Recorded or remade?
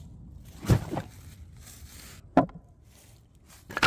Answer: recorded